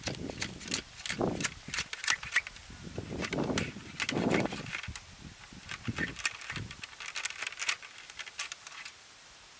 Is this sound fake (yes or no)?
no